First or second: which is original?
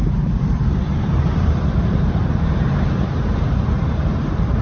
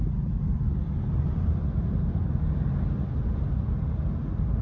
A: second